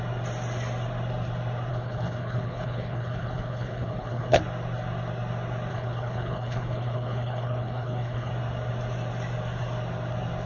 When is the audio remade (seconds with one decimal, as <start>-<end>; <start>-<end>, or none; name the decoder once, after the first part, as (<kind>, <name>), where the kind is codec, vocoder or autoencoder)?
1.7-4.4 (codec, HILCodec); 5.7-8.3